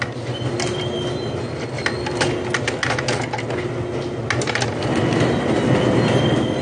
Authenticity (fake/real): real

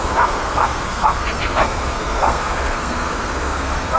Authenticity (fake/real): fake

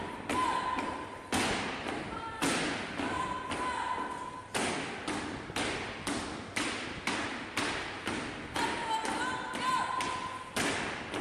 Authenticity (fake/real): real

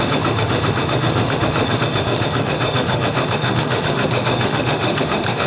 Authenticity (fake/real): fake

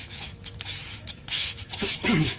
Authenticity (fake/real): fake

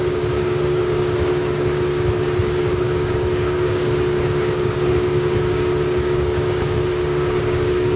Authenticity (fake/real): fake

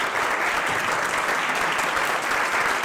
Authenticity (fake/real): real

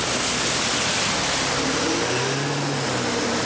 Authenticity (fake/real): real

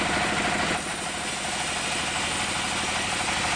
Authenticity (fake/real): real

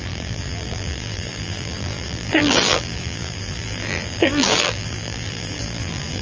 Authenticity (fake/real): fake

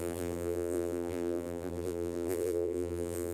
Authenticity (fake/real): fake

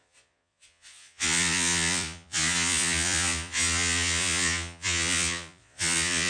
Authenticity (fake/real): fake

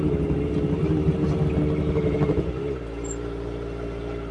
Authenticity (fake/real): real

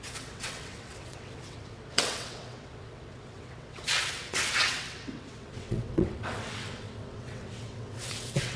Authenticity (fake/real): fake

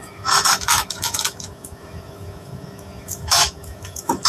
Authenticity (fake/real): fake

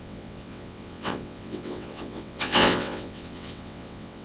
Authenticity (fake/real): fake